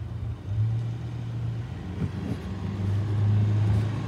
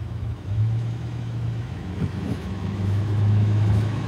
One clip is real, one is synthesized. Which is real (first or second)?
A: first